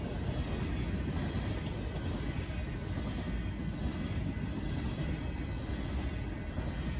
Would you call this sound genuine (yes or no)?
yes